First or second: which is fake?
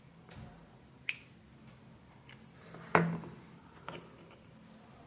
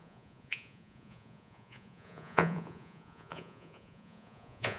second